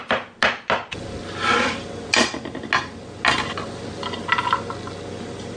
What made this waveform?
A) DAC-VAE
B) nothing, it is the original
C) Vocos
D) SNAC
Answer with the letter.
B